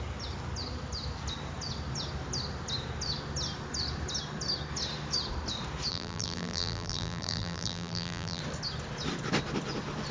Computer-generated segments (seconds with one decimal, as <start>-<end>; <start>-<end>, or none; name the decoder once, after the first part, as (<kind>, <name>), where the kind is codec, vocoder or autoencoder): 5.9-8.4 (vocoder, BigVGAN v2)